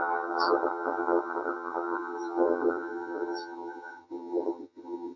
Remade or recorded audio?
remade